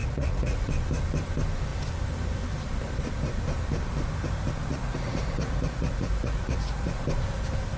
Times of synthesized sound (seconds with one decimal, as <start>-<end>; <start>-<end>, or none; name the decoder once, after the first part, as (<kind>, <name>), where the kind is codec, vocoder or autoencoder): 0.0-0.7 (vocoder, Vocos); 4.7-7.0